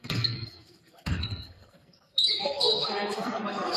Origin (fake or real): fake